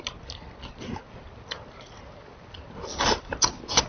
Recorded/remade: recorded